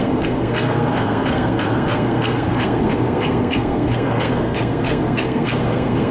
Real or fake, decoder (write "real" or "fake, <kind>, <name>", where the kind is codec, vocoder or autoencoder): fake, codec, SNAC